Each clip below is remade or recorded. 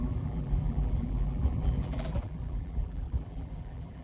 remade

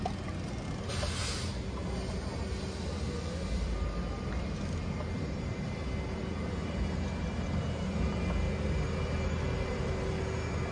recorded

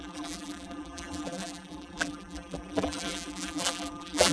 remade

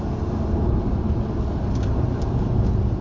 recorded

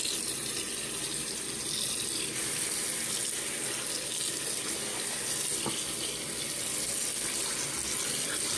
recorded